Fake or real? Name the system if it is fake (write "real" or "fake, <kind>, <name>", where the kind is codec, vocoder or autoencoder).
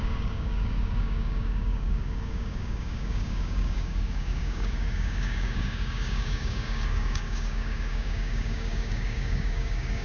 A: fake, codec, DAC